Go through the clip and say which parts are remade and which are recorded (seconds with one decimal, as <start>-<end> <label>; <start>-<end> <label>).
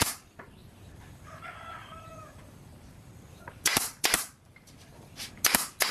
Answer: 0.0-0.6 recorded; 0.6-1.4 remade; 1.4-1.8 recorded; 1.8-5.3 remade; 5.3-5.9 recorded